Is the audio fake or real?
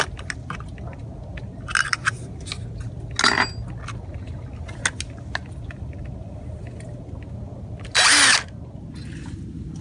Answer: real